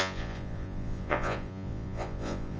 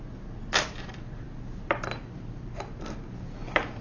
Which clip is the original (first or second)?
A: second